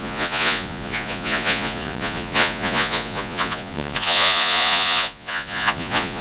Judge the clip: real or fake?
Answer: fake